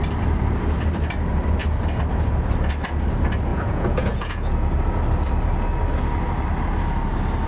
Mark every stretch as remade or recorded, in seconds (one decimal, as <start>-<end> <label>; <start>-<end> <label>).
0.0-3.5 recorded; 3.5-4.5 remade; 4.5-7.5 recorded

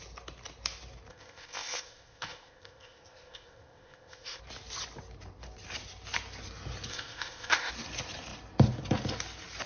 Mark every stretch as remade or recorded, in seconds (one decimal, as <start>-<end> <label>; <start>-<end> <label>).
0.0-1.1 recorded; 1.1-4.4 remade; 4.4-6.9 recorded; 6.9-7.7 remade; 7.7-9.7 recorded

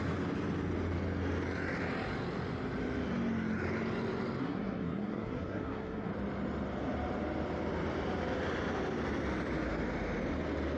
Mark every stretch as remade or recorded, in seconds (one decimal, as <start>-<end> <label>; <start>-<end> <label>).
0.0-4.4 recorded; 4.4-6.1 remade; 6.1-10.8 recorded

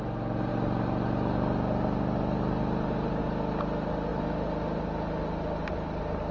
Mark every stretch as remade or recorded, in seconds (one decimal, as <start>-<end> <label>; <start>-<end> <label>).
0.0-6.3 recorded

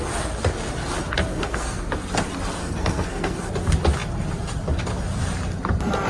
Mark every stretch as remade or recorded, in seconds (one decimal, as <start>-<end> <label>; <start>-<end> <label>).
0.0-1.3 recorded; 1.3-1.9 remade; 1.9-2.6 recorded; 2.6-3.5 remade; 3.5-6.1 recorded

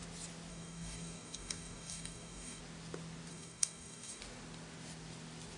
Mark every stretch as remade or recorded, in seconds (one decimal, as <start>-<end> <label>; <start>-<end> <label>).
0.0-0.5 recorded; 0.5-2.6 remade; 2.6-3.3 recorded; 3.3-4.2 remade; 4.2-5.6 recorded